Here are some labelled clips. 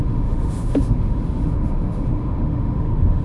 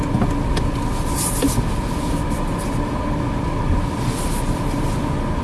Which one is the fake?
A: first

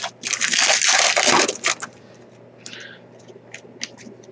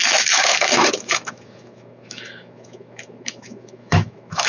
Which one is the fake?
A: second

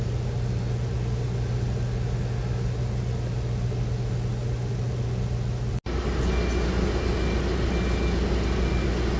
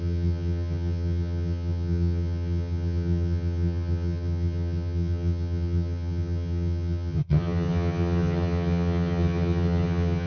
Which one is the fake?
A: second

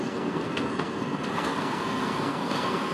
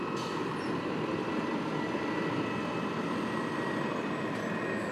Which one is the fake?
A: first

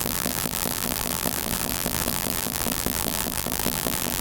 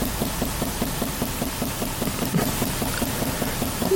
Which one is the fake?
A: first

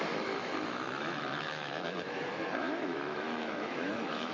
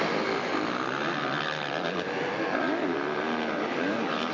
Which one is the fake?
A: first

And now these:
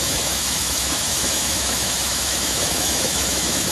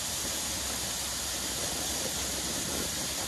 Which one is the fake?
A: first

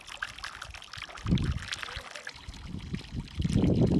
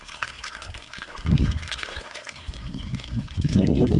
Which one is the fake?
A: second